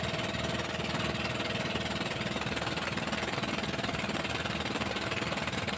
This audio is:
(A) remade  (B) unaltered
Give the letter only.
A